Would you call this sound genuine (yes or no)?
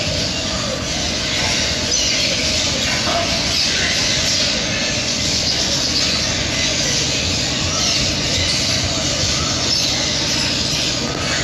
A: no